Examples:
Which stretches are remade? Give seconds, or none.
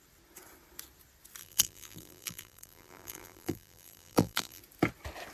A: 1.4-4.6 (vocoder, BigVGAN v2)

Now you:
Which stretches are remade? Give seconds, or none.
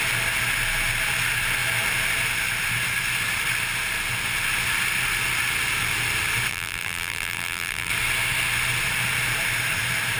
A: 6.5-7.9 (vocoder, BigVGAN v2)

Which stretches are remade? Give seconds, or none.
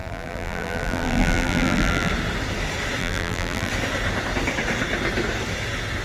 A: 0.0-2.1 (vocoder, BigVGAN v2); 3.0-3.7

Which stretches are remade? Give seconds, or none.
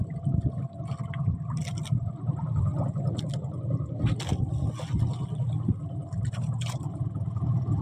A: 6.0-7.8 (vocoder, BigVGAN v2)